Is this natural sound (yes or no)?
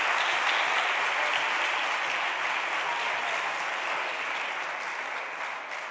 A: yes